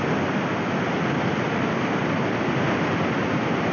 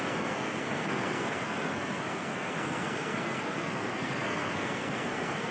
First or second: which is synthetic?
second